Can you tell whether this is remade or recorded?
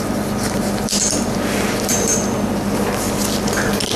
recorded